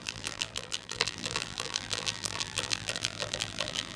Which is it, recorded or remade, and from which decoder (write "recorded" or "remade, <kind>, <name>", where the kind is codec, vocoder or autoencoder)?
remade, vocoder, BigVGAN v2